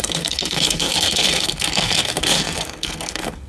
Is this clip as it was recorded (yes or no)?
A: no